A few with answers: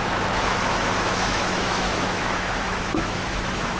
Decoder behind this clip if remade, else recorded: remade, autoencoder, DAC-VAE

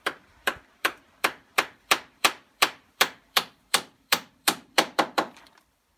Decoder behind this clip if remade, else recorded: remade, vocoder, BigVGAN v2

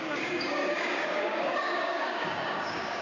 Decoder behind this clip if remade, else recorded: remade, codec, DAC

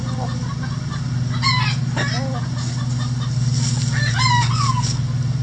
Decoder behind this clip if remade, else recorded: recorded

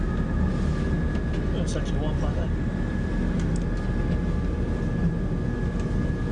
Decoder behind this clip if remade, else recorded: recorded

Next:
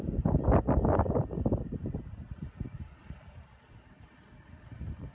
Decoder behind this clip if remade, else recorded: recorded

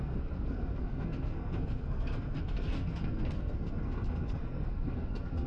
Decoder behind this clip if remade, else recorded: remade, codec, SNAC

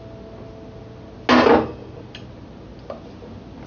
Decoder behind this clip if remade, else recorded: recorded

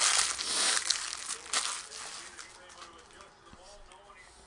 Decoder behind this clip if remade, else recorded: recorded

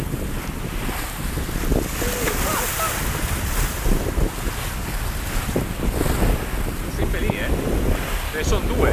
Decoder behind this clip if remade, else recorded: recorded